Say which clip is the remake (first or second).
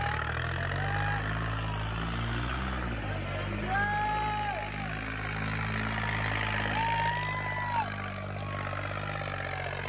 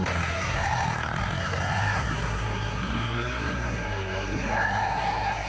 second